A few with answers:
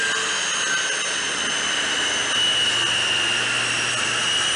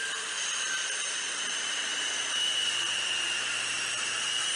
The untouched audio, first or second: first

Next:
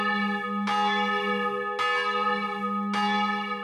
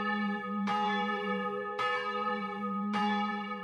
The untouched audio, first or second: first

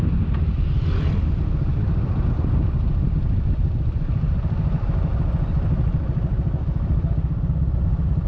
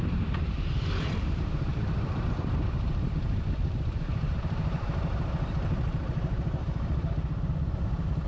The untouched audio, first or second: first